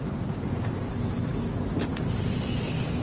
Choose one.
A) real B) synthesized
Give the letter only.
A